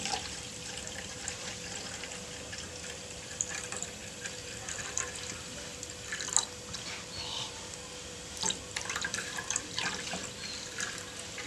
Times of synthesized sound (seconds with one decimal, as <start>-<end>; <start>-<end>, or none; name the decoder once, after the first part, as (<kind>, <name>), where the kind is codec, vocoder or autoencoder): 0.0-5.7 (vocoder, BigVGAN v2); 7.4-10.2